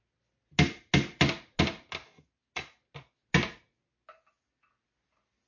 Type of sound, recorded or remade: recorded